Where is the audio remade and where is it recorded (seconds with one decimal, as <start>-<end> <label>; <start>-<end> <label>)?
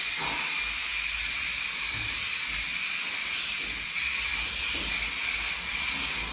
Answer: 0.0-6.3 recorded